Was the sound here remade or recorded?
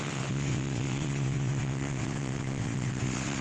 remade